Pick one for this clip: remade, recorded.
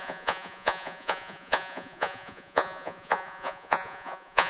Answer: remade